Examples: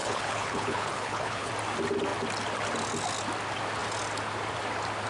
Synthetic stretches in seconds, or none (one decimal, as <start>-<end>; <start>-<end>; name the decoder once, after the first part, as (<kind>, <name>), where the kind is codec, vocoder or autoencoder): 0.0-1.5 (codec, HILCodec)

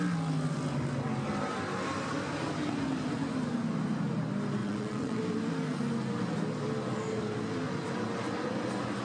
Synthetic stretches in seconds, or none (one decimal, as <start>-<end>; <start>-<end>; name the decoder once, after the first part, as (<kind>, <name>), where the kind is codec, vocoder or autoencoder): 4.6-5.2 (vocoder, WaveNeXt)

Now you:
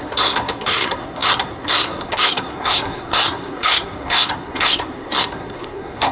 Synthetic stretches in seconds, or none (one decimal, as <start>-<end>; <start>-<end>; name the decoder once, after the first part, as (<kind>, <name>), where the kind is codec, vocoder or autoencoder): 0.0-6.1 (codec, SNAC)

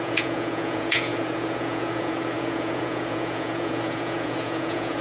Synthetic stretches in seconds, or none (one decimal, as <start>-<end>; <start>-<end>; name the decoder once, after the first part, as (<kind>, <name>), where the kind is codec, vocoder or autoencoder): 0.0-5.0 (vocoder, Vocos)